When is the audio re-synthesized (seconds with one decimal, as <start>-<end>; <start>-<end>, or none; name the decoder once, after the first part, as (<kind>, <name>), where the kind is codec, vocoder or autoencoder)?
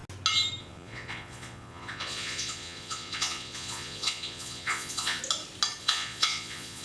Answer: 0.6-5.2 (vocoder, Vocos); 5.8-6.8